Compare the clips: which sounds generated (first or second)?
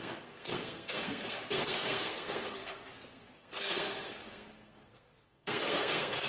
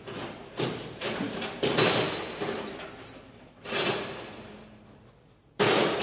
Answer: first